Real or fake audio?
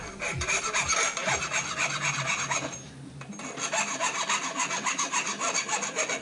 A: real